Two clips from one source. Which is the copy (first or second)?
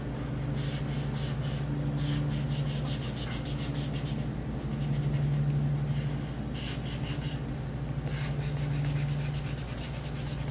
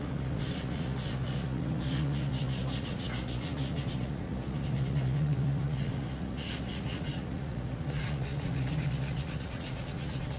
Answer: second